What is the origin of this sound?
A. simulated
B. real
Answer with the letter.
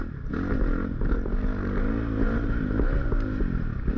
B